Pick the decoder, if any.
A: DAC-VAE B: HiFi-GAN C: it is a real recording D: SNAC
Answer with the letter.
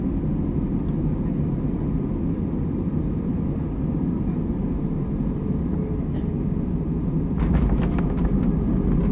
C